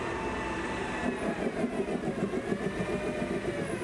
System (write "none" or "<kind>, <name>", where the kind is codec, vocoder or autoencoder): none